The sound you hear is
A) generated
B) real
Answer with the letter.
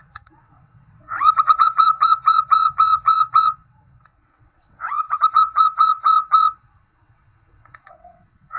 A